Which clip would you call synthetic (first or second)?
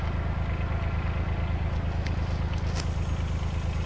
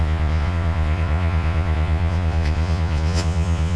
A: second